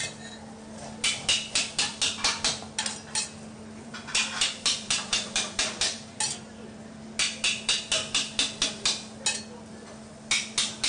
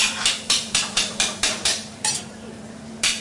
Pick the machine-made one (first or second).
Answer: second